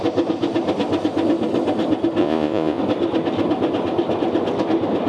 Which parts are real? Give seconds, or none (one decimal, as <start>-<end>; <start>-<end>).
0.0-2.2; 2.8-5.1